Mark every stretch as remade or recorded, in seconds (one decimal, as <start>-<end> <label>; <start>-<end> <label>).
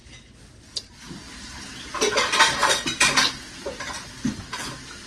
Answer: 0.0-5.1 recorded